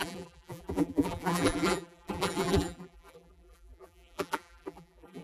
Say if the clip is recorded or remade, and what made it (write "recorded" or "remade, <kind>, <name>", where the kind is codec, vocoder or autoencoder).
remade, vocoder, BigVGAN v2